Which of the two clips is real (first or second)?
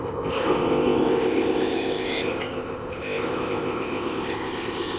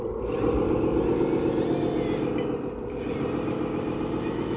second